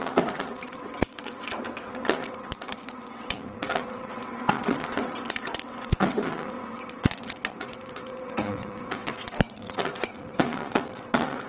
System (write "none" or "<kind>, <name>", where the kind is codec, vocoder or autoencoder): vocoder, WaveNeXt